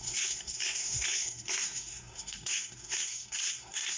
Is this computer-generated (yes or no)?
yes